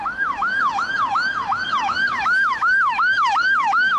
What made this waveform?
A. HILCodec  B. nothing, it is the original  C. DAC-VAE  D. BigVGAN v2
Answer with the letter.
C